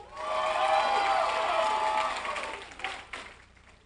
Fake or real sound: real